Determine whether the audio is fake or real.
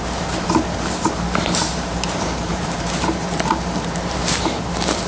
fake